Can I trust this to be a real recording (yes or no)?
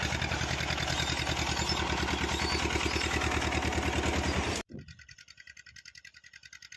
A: yes